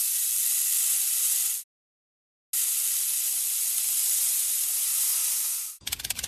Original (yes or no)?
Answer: yes